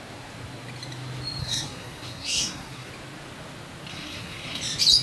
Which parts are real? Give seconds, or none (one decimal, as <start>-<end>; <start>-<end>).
0.0-1.4; 2.9-3.9; 4.6-5.0